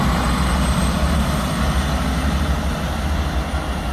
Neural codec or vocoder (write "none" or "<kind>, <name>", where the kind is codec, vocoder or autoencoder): none